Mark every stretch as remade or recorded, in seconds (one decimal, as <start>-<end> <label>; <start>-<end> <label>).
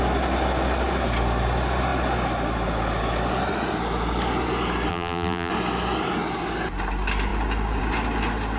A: 0.0-4.9 recorded; 4.9-5.5 remade; 5.5-8.6 recorded